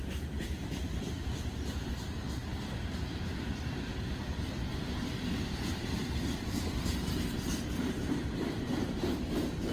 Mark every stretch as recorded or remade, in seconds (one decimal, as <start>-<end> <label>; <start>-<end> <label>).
0.0-3.9 remade; 3.9-5.2 recorded; 5.2-9.7 remade